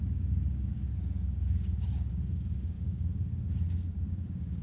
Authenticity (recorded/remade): remade